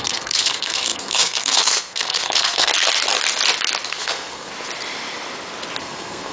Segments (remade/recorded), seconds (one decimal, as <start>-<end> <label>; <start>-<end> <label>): 0.0-2.7 remade; 2.7-3.9 recorded; 3.9-4.5 remade; 4.5-5.8 recorded; 5.8-6.3 remade